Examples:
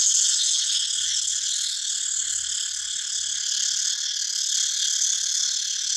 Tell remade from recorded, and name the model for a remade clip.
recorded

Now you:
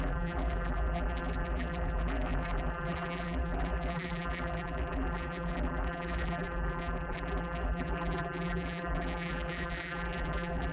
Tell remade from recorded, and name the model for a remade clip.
remade, vocoder, BigVGAN v2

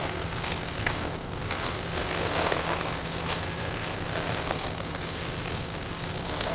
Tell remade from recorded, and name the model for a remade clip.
remade, codec, SNAC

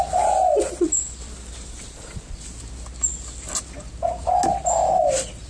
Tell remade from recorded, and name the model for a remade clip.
recorded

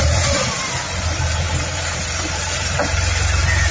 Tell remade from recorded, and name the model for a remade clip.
remade, vocoder, BigVGAN v2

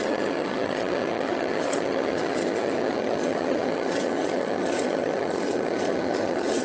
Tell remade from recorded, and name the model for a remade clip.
remade, vocoder, HiFi-GAN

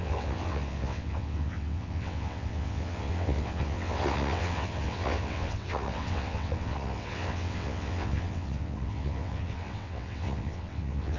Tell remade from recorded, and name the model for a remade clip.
remade, vocoder, WaveNeXt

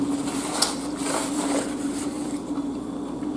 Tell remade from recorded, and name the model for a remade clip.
recorded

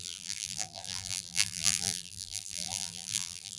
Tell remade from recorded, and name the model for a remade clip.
remade, vocoder, BigVGAN v2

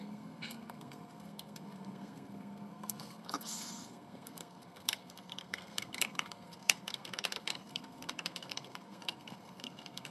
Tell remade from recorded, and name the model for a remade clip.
remade, codec, SNAC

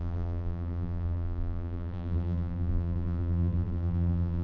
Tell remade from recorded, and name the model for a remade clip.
remade, vocoder, BigVGAN v2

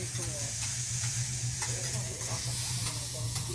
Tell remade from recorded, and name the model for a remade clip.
remade, vocoder, Vocos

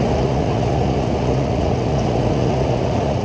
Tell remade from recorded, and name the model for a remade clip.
remade, vocoder, Vocos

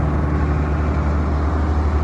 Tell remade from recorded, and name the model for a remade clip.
recorded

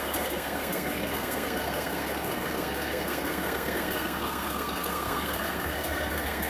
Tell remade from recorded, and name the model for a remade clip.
remade, codec, SNAC